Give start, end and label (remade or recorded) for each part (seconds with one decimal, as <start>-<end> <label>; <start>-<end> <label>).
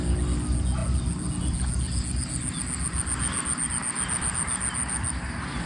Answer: 0.0-5.7 recorded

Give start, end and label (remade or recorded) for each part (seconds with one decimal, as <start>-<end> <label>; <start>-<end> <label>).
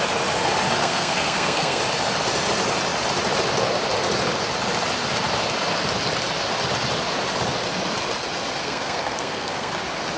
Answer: 0.0-0.8 recorded; 0.8-1.8 remade; 1.8-8.6 recorded; 8.6-9.7 remade; 9.7-10.2 recorded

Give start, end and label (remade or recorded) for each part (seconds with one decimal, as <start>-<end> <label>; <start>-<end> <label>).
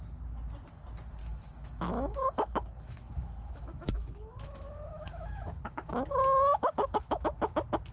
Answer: 0.0-1.2 recorded; 1.2-5.9 remade; 5.9-6.5 recorded; 6.5-7.5 remade; 7.5-7.9 recorded